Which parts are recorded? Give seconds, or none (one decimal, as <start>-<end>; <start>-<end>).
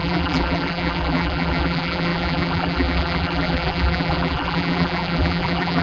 none